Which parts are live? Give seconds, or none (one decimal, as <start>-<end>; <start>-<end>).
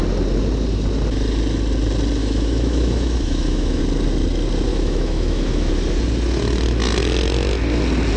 0.0-2.2; 3.8-4.7; 5.7-8.2